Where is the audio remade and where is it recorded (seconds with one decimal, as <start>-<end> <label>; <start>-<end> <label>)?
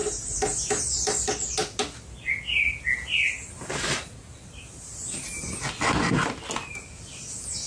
0.0-7.7 recorded